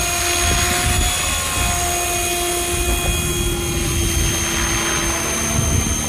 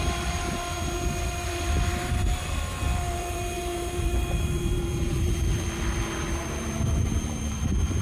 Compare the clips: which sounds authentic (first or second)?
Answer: first